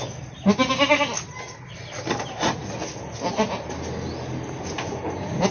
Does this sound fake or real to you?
real